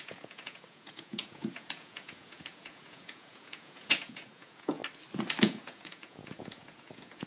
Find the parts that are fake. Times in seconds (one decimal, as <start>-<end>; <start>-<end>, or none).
0.0-4.8; 5.4-7.3